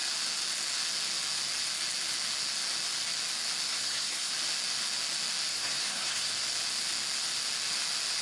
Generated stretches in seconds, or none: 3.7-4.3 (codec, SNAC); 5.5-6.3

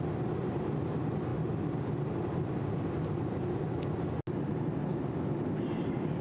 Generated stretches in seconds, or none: none

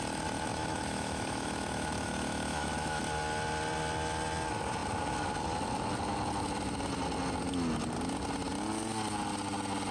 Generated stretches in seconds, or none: 0.5-3.0 (autoencoder, DAC-VAE)

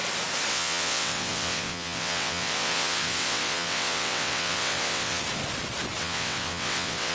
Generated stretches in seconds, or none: 0.5-5.2 (vocoder, WaveNeXt); 6.0-7.1

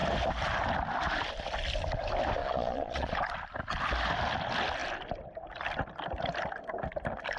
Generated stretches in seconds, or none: 2.4-3.1 (vocoder, Vocos)